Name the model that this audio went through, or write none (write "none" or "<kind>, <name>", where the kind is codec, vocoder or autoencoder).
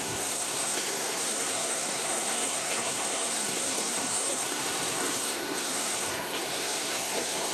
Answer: codec, SNAC